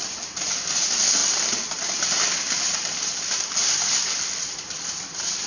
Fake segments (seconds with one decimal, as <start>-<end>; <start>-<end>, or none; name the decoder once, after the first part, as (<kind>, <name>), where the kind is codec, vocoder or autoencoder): 0.0-0.7 (vocoder, BigVGAN v2); 1.2-4.5